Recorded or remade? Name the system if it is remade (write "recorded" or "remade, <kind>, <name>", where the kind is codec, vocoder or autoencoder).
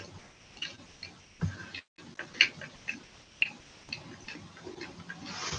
recorded